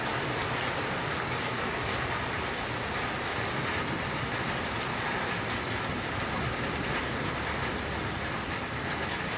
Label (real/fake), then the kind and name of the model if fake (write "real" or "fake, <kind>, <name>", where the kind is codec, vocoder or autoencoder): real